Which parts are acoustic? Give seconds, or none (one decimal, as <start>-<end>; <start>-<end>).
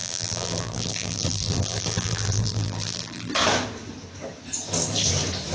3.3-5.5